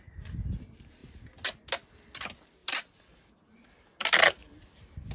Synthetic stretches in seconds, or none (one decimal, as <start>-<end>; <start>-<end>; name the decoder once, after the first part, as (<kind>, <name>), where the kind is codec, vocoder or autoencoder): 4.4-5.1 (vocoder, BigVGAN v2)

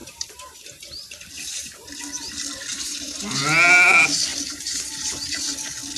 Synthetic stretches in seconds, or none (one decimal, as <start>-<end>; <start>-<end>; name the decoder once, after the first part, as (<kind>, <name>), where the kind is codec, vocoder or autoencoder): 0.0-1.3 (vocoder, BigVGAN v2); 2.7-3.4; 4.3-5.4